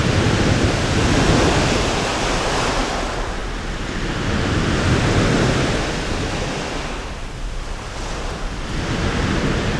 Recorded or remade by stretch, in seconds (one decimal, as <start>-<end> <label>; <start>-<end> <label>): 0.0-0.8 remade; 0.8-2.1 recorded; 2.1-2.7 remade; 2.7-9.8 recorded